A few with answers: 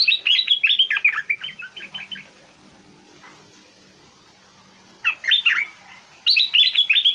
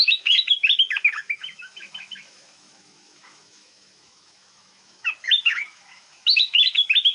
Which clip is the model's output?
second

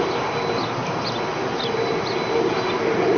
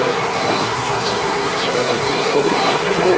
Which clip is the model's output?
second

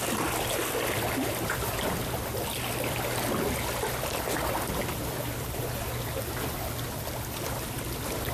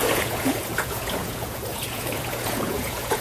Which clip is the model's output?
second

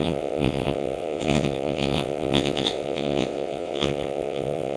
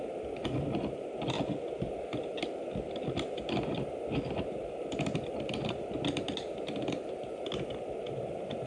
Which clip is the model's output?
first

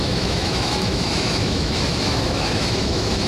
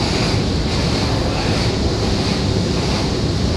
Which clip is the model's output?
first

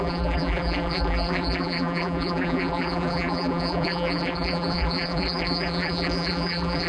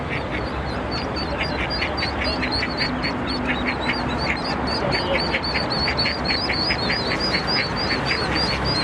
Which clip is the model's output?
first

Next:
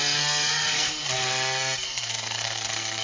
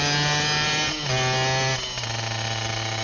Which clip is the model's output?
first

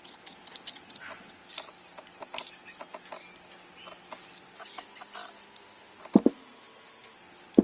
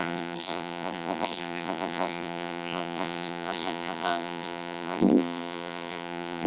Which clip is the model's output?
second